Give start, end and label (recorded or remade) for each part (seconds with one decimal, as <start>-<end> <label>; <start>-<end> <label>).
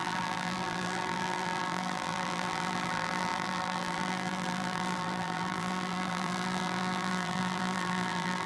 0.0-8.5 remade